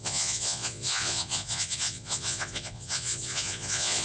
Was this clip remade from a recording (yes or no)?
yes